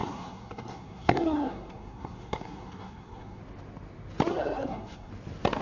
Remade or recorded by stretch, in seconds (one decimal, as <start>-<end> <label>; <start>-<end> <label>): 0.0-3.4 remade; 3.4-4.3 recorded; 4.3-5.1 remade; 5.1-5.6 recorded